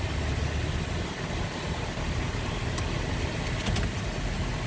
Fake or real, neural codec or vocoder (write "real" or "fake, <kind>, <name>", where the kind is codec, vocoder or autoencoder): real